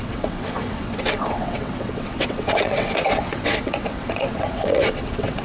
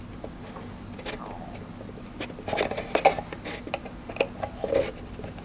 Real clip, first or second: second